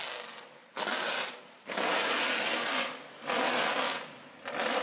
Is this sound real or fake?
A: real